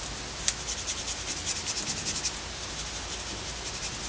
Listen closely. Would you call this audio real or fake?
real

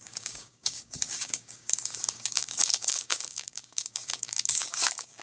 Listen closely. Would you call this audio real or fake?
fake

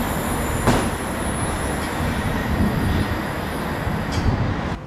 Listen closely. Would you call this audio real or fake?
real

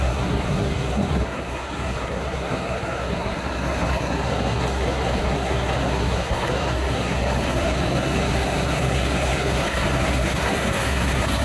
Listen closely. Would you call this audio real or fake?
fake